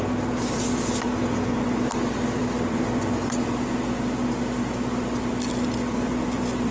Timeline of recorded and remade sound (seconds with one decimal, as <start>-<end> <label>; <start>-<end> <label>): 0.0-6.7 recorded